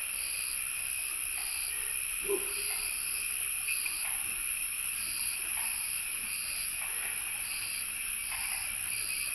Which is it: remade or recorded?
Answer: recorded